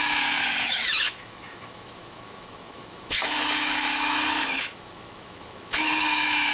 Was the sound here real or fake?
fake